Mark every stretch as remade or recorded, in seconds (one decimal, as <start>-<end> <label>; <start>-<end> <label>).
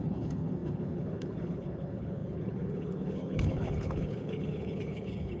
0.0-5.4 remade